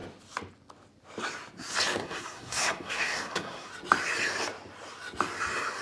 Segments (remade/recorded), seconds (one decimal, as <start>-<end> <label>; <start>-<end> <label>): 0.0-2.0 recorded; 2.0-3.7 remade; 3.7-5.8 recorded

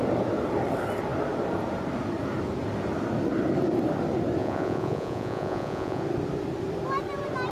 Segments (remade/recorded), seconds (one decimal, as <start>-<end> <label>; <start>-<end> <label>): 0.0-4.4 recorded; 4.4-6.0 remade; 6.0-7.5 recorded

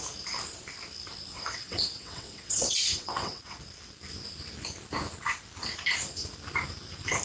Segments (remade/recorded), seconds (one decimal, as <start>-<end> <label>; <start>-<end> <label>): 0.0-1.3 recorded; 1.3-3.6 remade; 3.6-7.2 recorded

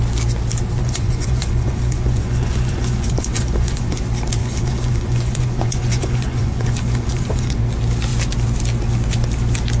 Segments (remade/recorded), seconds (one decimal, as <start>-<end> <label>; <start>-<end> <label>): 0.0-0.8 recorded; 0.8-4.0 remade; 4.0-4.4 recorded; 4.4-7.6 remade; 7.6-9.8 recorded

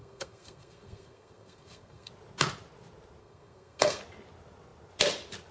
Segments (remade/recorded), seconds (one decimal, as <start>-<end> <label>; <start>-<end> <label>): 0.0-2.1 remade; 2.1-3.2 recorded; 3.2-4.0 remade; 4.0-5.5 recorded

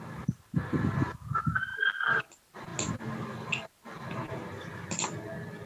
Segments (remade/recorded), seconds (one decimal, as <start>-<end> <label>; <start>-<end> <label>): 0.0-5.7 recorded

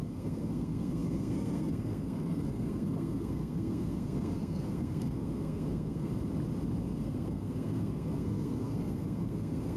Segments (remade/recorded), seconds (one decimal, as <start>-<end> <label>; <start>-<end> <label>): 0.0-6.1 remade; 6.1-6.8 recorded; 6.8-9.8 remade